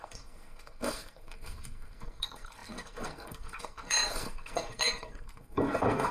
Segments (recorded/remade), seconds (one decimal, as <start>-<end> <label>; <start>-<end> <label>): 0.0-6.1 remade